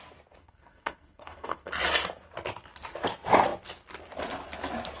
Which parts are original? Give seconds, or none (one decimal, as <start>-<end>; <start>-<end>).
0.0-0.4; 1.7-5.0